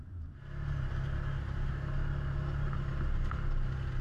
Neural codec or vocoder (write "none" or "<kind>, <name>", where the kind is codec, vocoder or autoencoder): none